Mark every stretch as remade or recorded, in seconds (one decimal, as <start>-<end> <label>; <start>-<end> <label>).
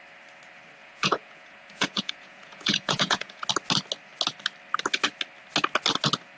0.0-0.8 recorded; 0.8-3.4 remade; 3.4-6.4 recorded